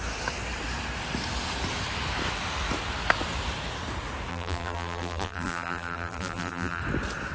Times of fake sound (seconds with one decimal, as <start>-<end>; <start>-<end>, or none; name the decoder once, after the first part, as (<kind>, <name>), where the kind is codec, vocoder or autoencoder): 4.3-6.8 (vocoder, BigVGAN v2)